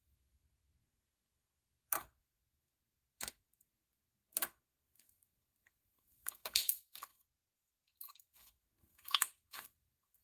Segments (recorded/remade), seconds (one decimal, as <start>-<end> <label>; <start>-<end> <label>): 0.0-10.2 remade